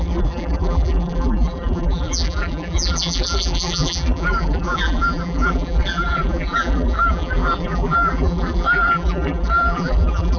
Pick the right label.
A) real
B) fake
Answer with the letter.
B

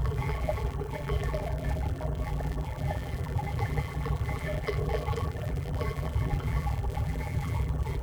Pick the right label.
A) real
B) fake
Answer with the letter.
B